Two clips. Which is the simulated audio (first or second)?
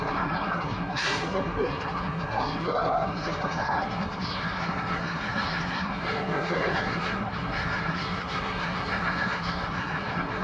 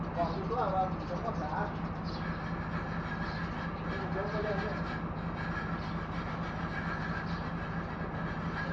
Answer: first